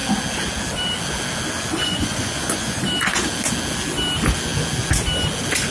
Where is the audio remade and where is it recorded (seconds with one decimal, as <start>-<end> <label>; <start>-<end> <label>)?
0.0-1.8 recorded; 1.8-2.8 remade; 2.8-5.7 recorded